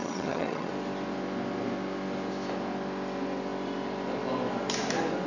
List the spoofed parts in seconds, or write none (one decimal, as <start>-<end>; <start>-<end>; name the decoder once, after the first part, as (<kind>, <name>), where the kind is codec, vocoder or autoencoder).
0.0-0.7 (vocoder, HiFi-GAN)

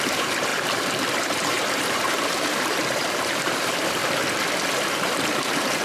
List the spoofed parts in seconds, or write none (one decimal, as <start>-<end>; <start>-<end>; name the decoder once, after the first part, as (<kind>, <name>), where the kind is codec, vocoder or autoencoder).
0.0-4.0 (vocoder, BigVGAN v2); 4.9-5.8

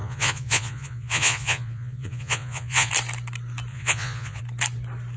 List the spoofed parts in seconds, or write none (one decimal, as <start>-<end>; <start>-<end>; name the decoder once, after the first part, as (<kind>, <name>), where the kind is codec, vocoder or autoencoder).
0.0-2.9 (vocoder, Vocos); 3.7-4.4

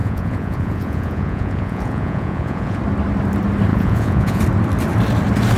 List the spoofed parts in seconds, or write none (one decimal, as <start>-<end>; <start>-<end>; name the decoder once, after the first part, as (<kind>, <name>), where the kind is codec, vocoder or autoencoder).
0.0-2.8 (vocoder, Vocos); 3.7-4.4

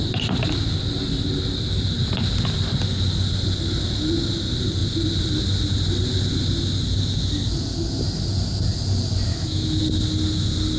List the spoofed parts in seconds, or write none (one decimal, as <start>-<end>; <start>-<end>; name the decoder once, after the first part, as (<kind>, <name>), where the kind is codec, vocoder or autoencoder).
9.3-9.8 (autoencoder, DAC-VAE)

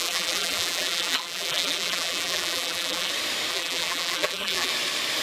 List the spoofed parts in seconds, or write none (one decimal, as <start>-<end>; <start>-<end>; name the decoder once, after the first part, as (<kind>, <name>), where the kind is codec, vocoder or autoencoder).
0.0-3.1 (vocoder, BigVGAN v2); 3.5-4.7

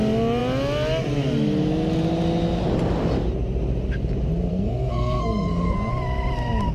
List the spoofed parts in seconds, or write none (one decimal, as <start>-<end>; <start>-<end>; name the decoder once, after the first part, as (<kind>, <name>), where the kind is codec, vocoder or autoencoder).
4.5-5.9 (codec, SNAC)

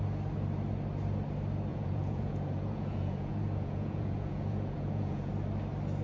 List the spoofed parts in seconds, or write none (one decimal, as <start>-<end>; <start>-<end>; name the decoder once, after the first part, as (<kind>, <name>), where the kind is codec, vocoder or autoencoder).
1.7-5.3 (vocoder, Vocos)